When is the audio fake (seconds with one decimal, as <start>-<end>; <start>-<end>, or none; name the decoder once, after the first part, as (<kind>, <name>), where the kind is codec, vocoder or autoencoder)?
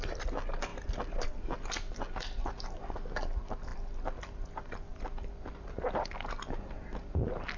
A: none